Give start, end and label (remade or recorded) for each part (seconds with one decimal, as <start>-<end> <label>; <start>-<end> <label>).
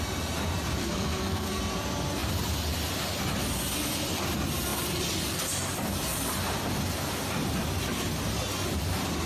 0.0-0.8 recorded; 0.8-1.6 remade; 1.6-9.3 recorded